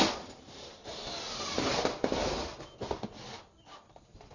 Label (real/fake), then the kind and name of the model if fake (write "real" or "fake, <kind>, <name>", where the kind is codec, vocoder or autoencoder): real